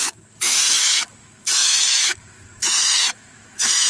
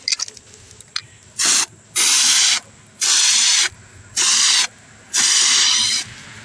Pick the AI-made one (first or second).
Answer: first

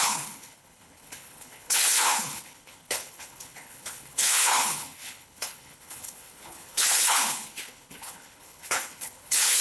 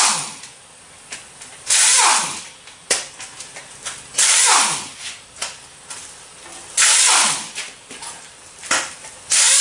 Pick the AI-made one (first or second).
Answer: first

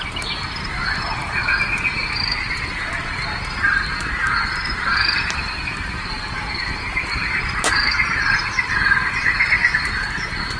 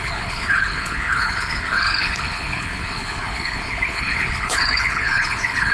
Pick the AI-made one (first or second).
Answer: second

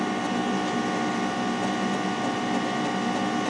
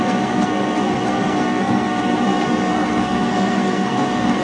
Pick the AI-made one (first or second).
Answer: second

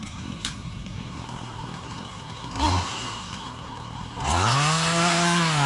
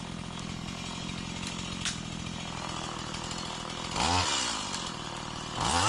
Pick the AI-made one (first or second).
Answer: first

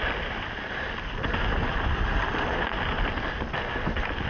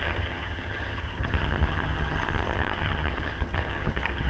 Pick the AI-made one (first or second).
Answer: second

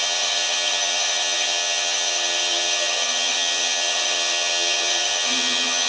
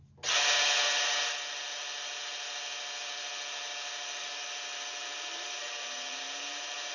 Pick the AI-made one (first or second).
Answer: first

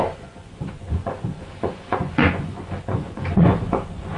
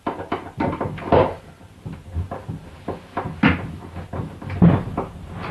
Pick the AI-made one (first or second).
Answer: first